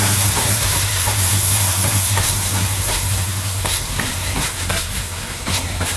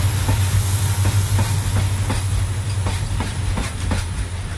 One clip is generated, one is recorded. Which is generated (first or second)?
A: first